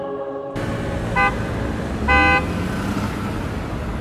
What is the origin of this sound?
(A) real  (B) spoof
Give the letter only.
A